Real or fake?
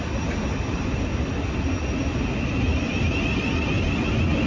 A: real